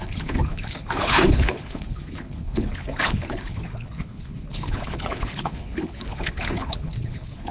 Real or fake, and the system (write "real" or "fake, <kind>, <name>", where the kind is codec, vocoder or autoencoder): fake, codec, HILCodec